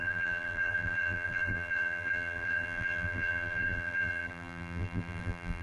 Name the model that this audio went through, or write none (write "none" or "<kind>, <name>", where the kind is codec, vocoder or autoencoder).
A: vocoder, BigVGAN v2